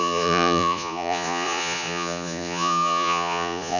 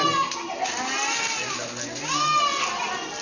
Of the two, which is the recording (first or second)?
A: second